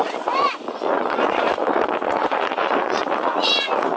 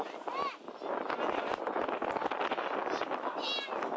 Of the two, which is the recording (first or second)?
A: second